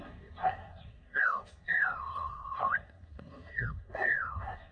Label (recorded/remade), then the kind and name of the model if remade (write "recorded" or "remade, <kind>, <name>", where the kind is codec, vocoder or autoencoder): remade, codec, SNAC